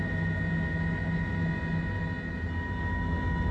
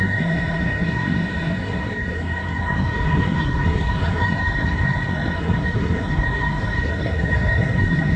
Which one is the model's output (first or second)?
second